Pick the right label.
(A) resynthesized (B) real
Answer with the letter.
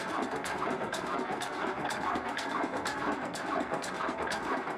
A